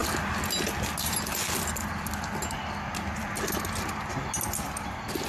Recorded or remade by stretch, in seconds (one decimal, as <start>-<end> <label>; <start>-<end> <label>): 0.0-5.3 recorded